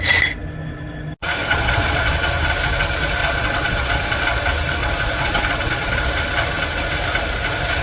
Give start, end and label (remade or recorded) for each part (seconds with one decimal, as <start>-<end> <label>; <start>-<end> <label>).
0.0-1.4 recorded; 1.4-2.1 remade; 2.1-3.2 recorded; 3.2-4.2 remade; 4.2-4.8 recorded; 4.8-6.0 remade; 6.0-7.8 recorded